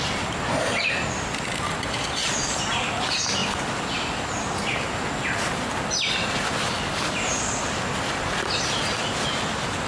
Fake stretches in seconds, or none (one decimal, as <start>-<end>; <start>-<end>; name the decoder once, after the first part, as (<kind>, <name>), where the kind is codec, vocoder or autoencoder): none